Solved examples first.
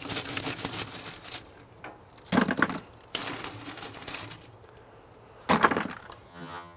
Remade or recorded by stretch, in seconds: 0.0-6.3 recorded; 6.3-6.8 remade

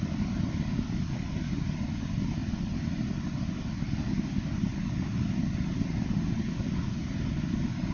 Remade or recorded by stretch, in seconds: 0.0-7.9 recorded

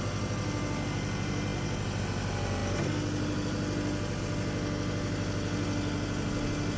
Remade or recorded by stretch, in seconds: 0.0-6.8 recorded

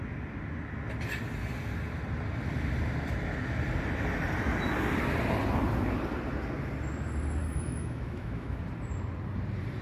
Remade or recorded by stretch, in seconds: 0.0-7.4 recorded; 7.4-8.6 remade; 8.6-9.8 recorded

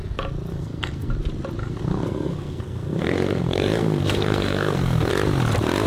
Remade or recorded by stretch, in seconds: 0.0-0.5 recorded; 0.5-1.1 remade; 1.1-1.6 recorded; 1.6-5.1 remade; 5.1-5.9 recorded